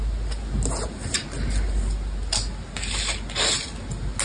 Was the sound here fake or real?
real